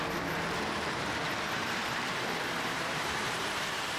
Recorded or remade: remade